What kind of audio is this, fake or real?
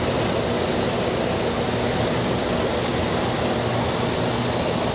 real